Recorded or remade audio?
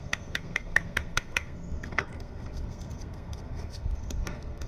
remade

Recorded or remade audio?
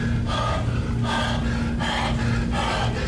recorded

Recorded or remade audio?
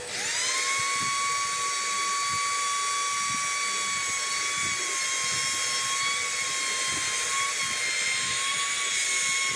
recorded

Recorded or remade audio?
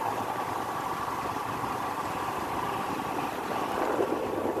recorded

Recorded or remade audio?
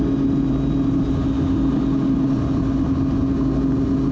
recorded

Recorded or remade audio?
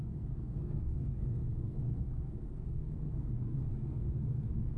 remade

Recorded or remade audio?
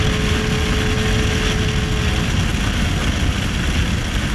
recorded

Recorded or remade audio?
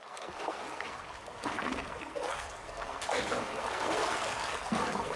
remade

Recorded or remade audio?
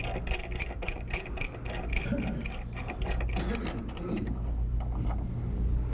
recorded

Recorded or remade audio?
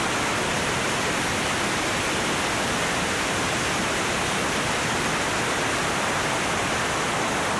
recorded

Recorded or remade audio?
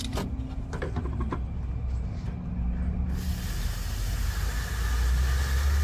recorded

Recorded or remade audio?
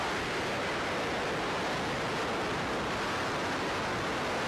recorded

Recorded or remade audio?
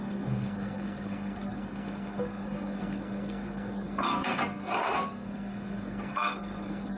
remade